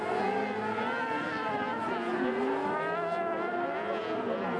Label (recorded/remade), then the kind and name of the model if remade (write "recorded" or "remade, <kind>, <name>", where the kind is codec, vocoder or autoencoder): recorded